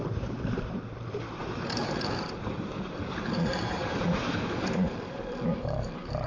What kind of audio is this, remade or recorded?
remade